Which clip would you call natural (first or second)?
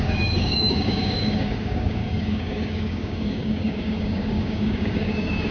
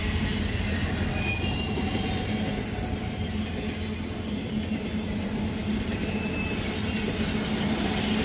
second